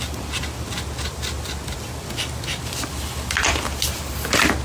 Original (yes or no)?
yes